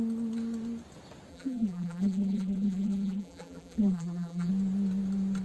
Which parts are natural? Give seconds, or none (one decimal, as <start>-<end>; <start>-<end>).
0.0-1.3; 4.5-5.4